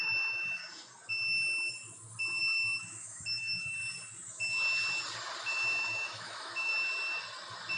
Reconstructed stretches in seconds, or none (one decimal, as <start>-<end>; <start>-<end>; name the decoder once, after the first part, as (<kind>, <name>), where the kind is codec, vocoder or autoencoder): 0.0-0.6 (autoencoder, DAC-VAE); 2.4-3.8; 5.4-6.7

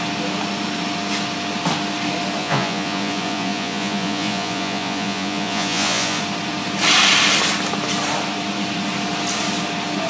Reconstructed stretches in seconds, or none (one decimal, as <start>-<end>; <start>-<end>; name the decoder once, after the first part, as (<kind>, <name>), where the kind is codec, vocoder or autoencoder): 2.4-6.2 (vocoder, Vocos)